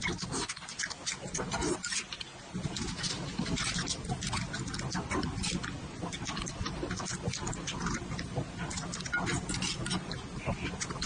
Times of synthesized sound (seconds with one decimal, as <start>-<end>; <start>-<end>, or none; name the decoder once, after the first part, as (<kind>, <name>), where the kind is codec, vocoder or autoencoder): none